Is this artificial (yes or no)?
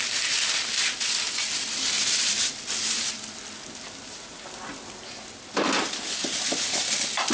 no